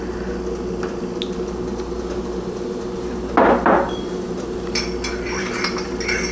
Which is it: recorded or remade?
recorded